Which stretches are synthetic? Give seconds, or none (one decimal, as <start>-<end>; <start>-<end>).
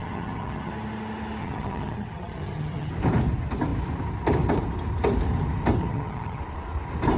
0.0-0.7; 1.4-2.9; 5.8-6.4